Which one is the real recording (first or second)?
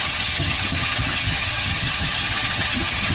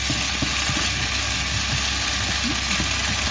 second